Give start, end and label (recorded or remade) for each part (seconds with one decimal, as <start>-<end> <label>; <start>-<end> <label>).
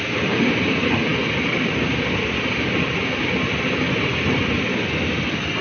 0.0-5.6 recorded